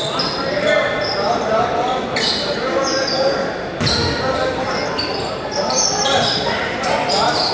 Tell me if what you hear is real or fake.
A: real